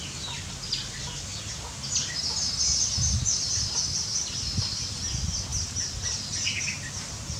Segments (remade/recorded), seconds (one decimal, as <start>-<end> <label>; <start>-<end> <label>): 0.0-7.4 recorded